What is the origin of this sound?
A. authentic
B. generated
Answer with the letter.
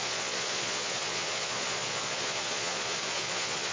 B